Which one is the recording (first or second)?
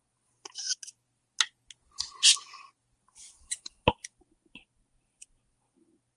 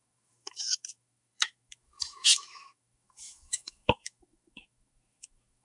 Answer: first